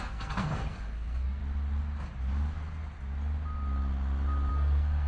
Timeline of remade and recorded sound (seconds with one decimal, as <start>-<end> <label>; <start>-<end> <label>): 0.0-1.4 remade; 1.4-4.5 recorded; 4.5-5.1 remade